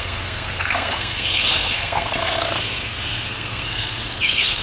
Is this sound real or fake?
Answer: fake